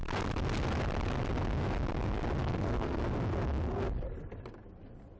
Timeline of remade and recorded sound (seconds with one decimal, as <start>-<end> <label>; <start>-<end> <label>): 0.0-2.4 recorded; 2.4-3.0 remade; 3.0-5.2 recorded